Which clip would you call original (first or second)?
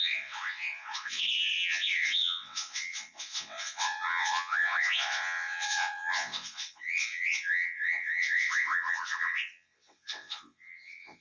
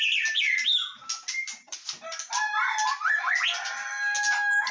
second